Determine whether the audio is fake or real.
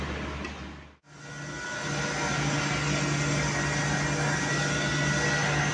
real